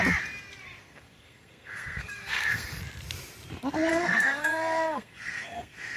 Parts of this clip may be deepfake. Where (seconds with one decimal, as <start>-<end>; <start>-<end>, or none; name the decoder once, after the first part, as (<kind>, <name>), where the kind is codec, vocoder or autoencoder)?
0.8-2.8 (codec, SNAC); 3.9-6.0